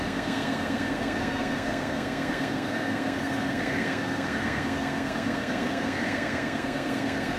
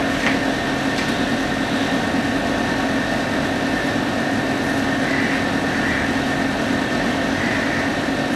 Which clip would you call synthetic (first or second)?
first